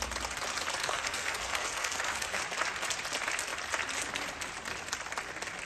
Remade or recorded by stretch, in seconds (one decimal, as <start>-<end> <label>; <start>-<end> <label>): 0.0-0.8 recorded; 0.8-2.4 remade; 2.4-5.6 recorded